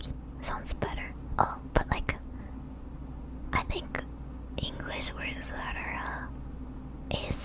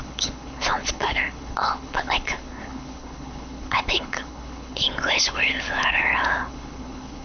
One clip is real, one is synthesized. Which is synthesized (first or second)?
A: second